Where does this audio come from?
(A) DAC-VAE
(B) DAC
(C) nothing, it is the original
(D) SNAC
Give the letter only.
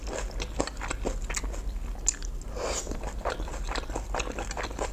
C